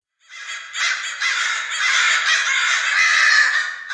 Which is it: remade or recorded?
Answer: recorded